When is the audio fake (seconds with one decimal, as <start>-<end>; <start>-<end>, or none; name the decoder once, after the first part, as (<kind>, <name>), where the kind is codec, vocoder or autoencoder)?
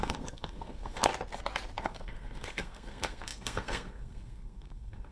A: 0.0-1.1 (codec, SNAC); 1.8-5.1